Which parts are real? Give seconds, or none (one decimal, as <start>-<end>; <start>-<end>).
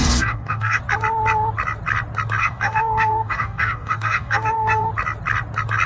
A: 0.8-2.4; 4.9-5.9